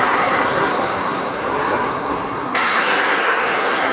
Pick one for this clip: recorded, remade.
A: remade